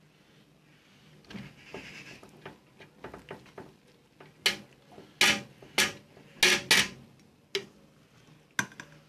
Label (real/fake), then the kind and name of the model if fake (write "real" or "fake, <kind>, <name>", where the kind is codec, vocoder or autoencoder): real